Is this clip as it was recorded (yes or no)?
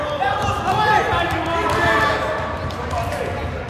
no